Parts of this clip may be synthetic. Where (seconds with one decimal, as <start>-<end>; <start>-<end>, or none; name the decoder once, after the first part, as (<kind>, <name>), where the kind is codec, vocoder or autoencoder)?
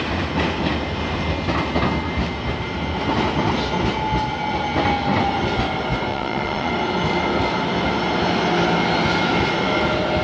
6.1-6.7 (vocoder, Vocos)